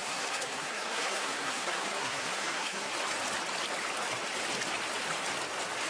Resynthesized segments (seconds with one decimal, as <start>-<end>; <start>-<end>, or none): 0.0-2.9